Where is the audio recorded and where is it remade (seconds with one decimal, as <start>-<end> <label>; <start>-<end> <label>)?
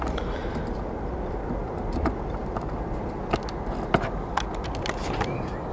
0.0-5.7 recorded